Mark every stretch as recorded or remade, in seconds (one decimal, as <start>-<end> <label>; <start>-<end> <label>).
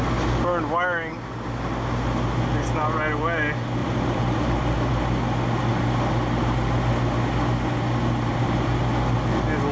0.0-3.8 recorded; 3.8-4.9 remade; 4.9-8.3 recorded; 8.3-8.8 remade; 8.8-9.7 recorded